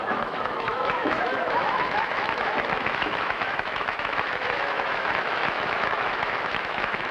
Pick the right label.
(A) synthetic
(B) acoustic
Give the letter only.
A